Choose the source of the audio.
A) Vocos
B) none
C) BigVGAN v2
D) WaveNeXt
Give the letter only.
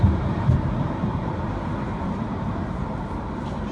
C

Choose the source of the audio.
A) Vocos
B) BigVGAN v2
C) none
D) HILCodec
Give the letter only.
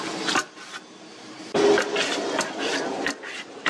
C